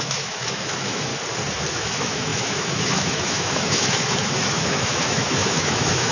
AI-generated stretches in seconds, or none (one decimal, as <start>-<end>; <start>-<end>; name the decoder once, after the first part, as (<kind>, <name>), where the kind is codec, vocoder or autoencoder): 0.0-1.1 (autoencoder, DAC-VAE); 1.7-6.1